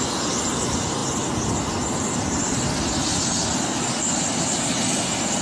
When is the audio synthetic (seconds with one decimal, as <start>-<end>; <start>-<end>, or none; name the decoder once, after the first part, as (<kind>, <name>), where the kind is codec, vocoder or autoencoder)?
none